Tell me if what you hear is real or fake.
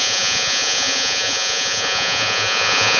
fake